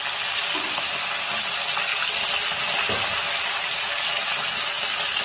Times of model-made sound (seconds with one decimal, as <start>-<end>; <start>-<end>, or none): none